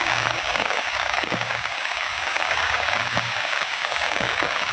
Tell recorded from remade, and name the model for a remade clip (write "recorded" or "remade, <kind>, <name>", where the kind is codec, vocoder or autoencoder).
remade, codec, DAC